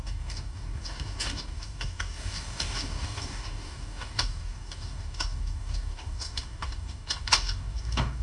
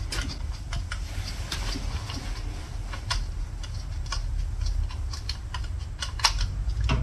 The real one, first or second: second